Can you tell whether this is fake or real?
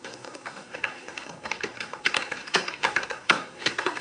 fake